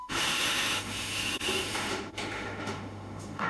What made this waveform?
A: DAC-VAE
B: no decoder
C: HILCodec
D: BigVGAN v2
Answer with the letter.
A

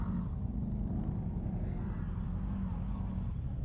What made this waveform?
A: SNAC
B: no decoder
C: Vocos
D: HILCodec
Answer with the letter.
B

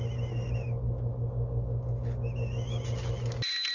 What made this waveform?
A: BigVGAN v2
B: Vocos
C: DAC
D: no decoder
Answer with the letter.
D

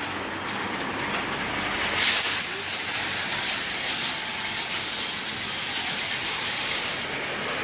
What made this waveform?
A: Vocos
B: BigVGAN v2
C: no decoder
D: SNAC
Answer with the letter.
C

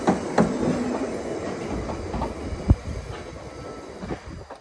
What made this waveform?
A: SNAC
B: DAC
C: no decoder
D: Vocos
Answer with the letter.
C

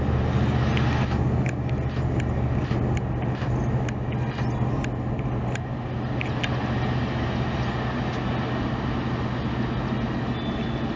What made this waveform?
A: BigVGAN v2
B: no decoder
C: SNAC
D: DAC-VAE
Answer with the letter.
B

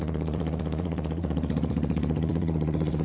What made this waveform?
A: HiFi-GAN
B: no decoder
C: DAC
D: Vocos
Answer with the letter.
D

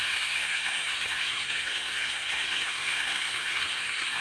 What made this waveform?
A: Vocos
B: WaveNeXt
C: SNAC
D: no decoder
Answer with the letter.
C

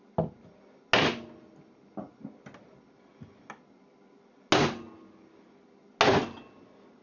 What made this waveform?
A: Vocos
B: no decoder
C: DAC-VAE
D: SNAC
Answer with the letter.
B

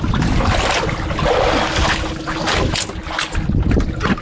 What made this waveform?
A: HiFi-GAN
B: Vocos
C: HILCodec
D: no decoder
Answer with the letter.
D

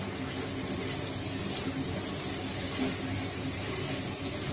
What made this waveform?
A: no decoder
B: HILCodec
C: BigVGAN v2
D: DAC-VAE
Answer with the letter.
A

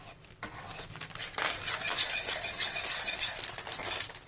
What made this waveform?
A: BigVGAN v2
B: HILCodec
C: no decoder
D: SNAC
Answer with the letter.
C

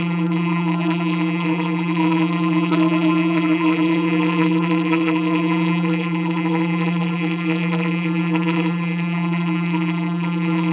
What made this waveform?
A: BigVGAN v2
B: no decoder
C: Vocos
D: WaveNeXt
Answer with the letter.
A